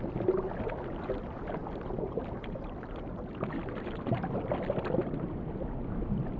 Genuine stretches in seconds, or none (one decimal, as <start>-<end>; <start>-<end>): 0.0-6.4